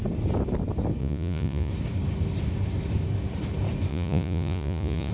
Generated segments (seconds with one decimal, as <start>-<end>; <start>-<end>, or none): 1.0-1.7; 3.9-5.1